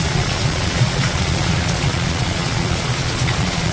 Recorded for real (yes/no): no